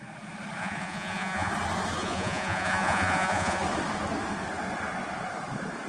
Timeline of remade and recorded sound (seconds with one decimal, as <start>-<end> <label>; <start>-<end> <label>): 0.0-0.6 recorded; 0.6-1.5 remade; 1.5-2.0 recorded; 2.0-3.6 remade; 3.6-5.9 recorded